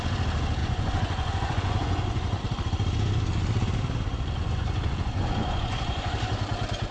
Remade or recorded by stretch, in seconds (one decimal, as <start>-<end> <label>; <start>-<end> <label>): 0.0-0.6 recorded; 0.6-2.4 remade; 2.4-4.4 recorded; 4.4-6.1 remade; 6.1-6.9 recorded